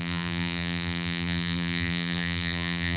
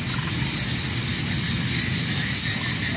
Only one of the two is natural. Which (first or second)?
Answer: second